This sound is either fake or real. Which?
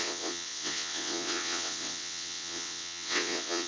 fake